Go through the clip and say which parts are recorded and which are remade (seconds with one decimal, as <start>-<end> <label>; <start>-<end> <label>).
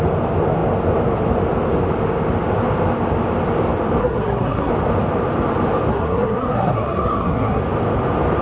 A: 0.0-4.0 recorded; 4.0-4.7 remade; 4.7-5.9 recorded; 5.9-7.6 remade; 7.6-8.4 recorded